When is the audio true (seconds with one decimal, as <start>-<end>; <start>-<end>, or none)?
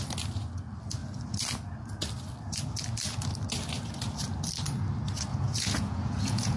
0.0-5.3